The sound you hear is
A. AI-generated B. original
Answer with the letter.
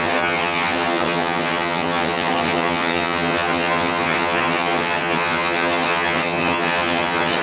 A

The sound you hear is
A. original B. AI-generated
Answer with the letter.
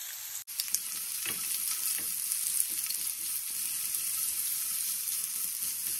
A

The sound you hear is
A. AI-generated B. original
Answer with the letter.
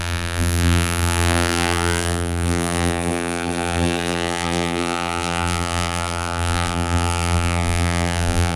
A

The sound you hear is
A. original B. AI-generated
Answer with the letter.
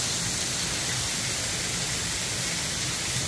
A